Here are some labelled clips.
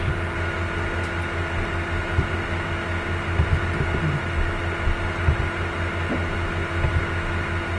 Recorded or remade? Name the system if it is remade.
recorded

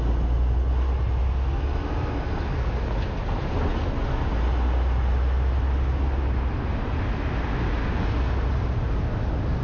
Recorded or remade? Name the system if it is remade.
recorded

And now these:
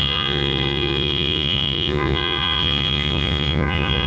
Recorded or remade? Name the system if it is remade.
remade, vocoder, Vocos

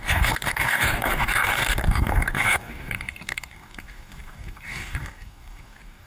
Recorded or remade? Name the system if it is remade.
remade, codec, DAC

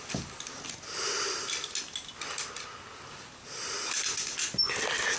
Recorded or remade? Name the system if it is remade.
recorded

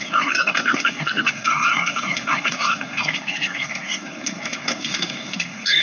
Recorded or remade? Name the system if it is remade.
remade, codec, SNAC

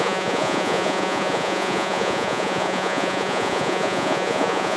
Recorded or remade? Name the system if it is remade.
remade, vocoder, Vocos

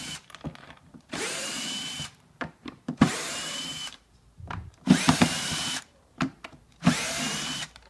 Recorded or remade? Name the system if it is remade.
remade, vocoder, BigVGAN v2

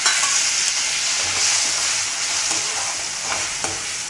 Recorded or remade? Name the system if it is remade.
recorded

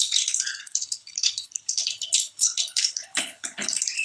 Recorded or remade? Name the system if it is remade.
remade, codec, HILCodec